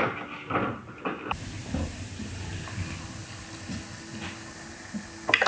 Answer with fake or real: real